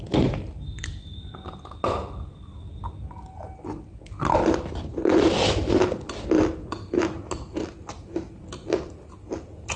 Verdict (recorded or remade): recorded